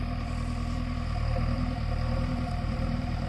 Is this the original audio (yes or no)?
no